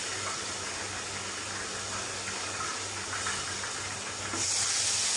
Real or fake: real